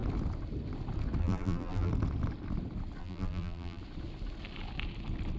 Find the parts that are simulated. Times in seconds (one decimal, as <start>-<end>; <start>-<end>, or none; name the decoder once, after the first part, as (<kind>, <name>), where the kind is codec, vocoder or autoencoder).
1.2-1.9 (vocoder, BigVGAN v2); 3.0-3.8